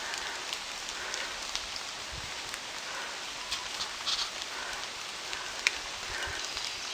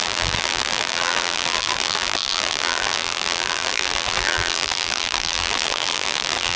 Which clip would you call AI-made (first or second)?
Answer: second